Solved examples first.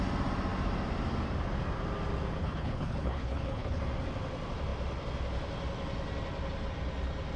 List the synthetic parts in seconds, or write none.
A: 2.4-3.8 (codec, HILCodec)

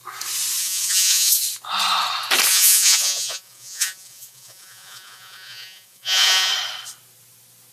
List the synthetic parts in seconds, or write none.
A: 0.6-1.4 (vocoder, Vocos); 2.5-6.5

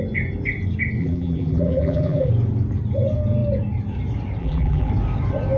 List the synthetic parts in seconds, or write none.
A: 1.0-2.3 (vocoder, BigVGAN v2); 4.4-4.9